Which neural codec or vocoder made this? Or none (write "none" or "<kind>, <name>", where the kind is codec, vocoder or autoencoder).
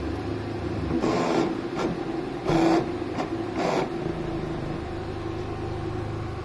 none